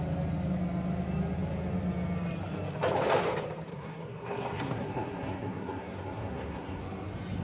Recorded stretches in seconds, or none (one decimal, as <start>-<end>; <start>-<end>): 0.0-3.7; 6.8-7.4